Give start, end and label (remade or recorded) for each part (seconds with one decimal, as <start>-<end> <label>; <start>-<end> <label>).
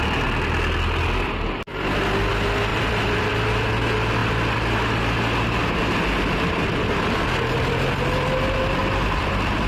0.0-2.7 recorded; 2.7-3.3 remade; 3.3-8.8 recorded; 8.8-9.7 remade